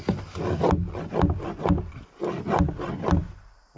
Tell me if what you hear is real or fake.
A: real